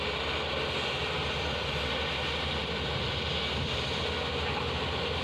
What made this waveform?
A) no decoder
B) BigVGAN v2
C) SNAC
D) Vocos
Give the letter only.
A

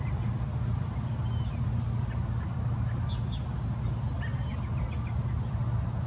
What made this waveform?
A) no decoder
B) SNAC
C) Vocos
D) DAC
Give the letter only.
A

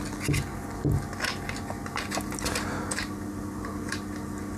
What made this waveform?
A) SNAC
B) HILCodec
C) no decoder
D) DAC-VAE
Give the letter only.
C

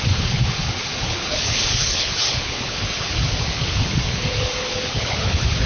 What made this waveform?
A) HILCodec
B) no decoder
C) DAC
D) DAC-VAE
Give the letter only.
A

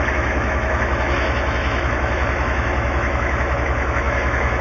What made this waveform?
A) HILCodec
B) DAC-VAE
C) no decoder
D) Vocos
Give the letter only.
B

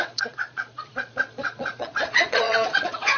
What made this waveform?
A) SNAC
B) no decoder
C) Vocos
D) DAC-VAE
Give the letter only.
C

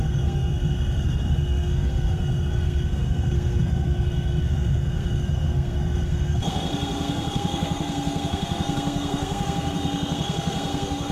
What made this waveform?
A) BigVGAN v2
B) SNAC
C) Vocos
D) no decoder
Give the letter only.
B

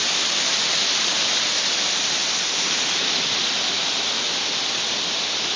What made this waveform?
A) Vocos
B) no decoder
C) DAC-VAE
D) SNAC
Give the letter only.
B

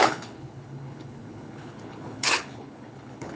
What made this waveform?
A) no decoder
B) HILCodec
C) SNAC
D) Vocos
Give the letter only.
B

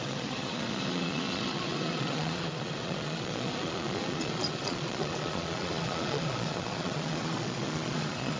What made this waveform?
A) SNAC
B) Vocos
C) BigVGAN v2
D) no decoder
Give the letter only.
B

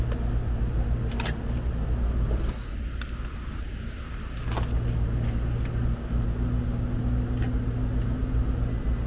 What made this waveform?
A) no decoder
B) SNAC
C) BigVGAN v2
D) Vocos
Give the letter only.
A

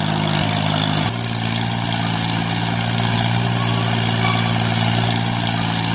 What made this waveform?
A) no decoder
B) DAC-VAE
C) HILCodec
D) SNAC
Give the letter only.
A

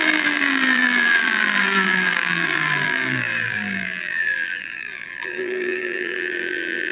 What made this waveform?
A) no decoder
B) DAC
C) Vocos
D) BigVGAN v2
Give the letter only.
D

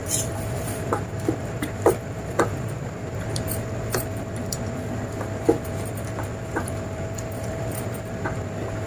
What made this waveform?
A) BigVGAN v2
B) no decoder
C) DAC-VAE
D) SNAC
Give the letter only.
A